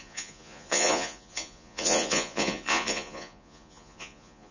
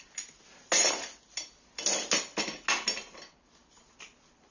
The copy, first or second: first